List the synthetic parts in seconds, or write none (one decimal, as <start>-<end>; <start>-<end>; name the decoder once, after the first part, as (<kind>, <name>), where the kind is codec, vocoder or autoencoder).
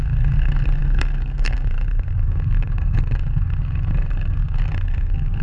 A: 0.0-5.4 (codec, SNAC)